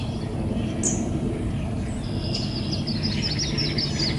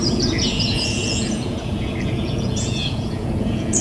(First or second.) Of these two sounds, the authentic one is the first